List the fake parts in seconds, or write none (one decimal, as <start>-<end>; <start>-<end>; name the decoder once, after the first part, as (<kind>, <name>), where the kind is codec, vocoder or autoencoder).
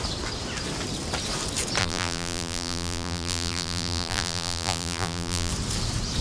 1.8-5.5 (vocoder, BigVGAN v2)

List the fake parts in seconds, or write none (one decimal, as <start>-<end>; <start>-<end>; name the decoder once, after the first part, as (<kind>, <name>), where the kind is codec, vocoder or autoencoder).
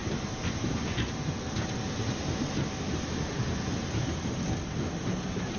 none